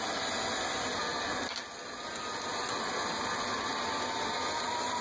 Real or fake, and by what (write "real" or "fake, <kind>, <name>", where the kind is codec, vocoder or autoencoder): real